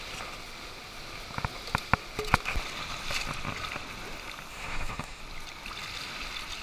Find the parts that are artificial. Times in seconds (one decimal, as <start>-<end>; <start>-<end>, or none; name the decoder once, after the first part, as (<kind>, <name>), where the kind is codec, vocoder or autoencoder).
4.5-5.2 (autoencoder, DAC-VAE)